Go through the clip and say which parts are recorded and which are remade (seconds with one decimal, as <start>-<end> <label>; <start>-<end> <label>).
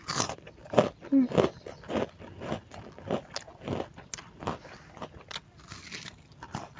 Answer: 0.0-6.8 recorded